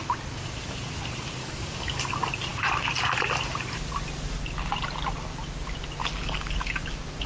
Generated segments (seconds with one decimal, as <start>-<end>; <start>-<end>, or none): 1.4-2.0; 6.0-6.8